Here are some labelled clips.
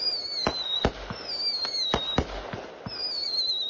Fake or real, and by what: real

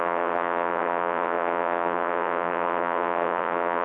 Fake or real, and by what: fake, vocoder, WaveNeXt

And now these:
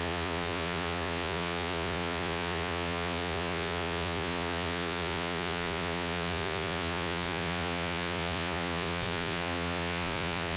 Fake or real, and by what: fake, vocoder, Vocos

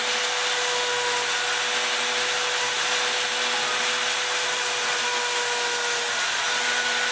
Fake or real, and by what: real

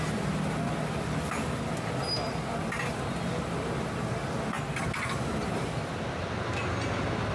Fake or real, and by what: real